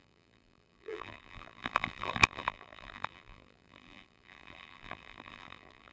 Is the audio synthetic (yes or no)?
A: yes